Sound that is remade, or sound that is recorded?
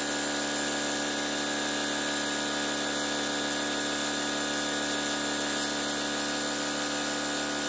recorded